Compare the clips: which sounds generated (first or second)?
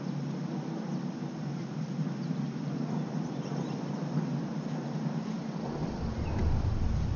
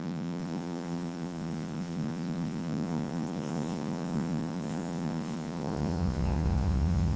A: second